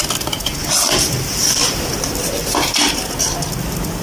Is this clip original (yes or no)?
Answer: yes